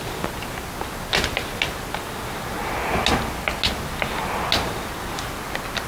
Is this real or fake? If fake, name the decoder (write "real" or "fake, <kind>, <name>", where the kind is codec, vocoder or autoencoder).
real